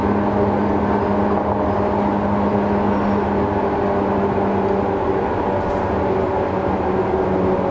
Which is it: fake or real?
real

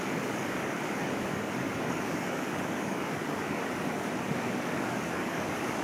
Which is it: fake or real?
fake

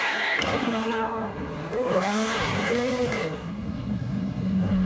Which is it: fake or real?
fake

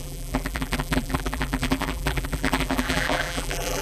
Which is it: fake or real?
fake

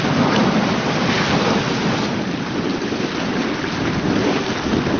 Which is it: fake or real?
real